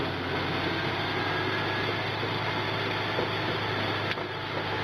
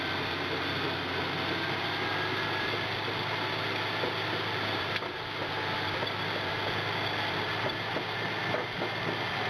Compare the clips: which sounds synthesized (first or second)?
second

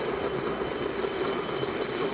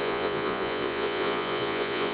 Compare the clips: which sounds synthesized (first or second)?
second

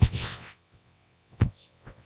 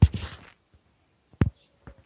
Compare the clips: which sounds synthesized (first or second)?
first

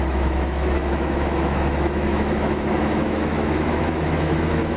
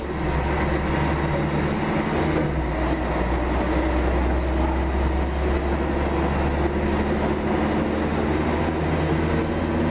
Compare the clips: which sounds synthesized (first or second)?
first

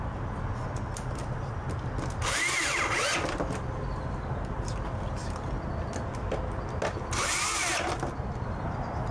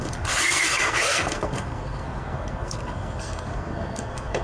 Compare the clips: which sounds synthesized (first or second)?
second